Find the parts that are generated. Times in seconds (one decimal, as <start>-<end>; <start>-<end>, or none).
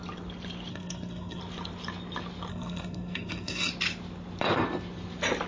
0.7-1.4; 2.5-3.7